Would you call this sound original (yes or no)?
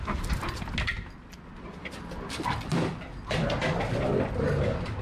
yes